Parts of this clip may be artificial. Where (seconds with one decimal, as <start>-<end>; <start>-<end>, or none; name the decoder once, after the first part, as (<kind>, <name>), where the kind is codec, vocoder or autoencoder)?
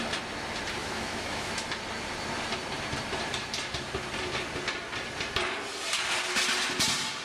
0.8-1.5 (autoencoder, DAC-VAE)